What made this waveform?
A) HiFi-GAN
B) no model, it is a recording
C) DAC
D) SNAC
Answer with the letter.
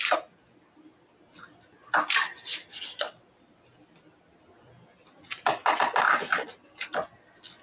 B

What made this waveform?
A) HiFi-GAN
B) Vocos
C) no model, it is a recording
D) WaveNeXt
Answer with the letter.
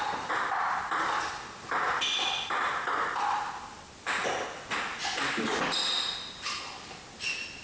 C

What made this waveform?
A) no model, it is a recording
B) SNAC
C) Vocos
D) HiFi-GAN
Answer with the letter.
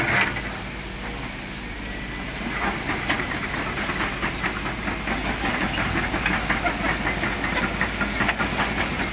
A